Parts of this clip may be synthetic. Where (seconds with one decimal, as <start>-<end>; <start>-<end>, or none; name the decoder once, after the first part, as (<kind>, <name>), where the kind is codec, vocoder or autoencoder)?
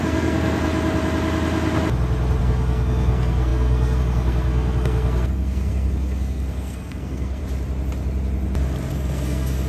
0.0-0.7 (codec, SNAC); 2.4-7.4; 8.9-9.7